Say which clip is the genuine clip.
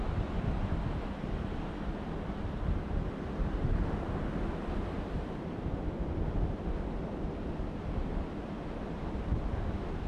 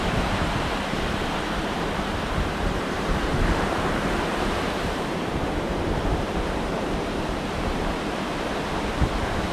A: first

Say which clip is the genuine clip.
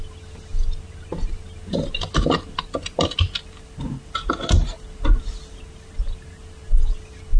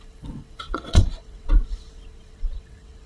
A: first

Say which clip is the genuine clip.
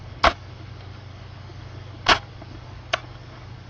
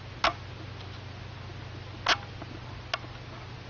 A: second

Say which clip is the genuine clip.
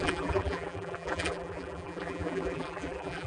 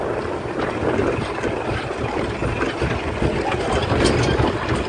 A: second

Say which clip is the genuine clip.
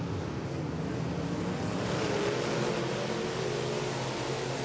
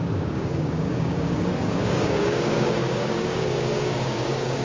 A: first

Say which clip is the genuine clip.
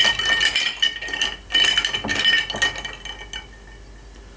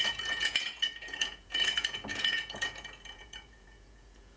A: first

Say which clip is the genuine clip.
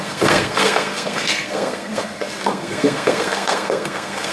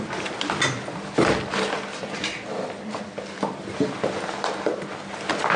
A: second